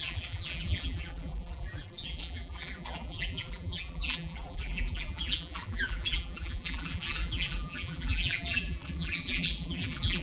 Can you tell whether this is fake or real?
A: fake